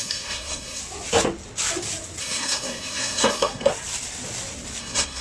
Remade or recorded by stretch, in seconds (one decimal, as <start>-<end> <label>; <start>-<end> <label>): 0.0-0.8 remade; 0.8-2.2 recorded; 2.2-3.7 remade; 3.7-4.8 recorded; 4.8-5.2 remade